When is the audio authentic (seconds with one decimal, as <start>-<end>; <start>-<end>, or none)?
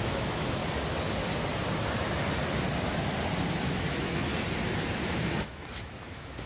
0.6-3.8; 4.3-5.1